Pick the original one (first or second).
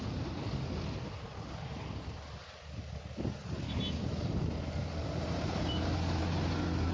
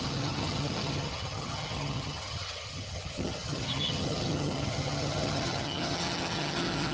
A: first